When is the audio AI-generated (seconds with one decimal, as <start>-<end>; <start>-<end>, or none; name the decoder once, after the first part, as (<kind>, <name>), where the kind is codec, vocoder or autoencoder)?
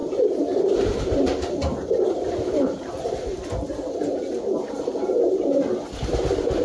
0.0-4.0 (vocoder, BigVGAN v2)